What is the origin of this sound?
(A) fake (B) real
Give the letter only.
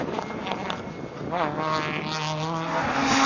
B